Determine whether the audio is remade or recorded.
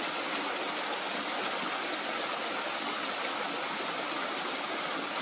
recorded